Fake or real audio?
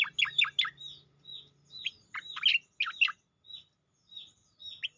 real